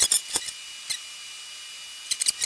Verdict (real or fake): real